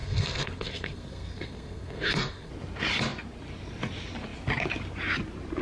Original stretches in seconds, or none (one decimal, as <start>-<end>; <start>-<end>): 2.5-5.6